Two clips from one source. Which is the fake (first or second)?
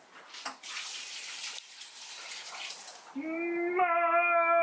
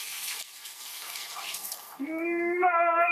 second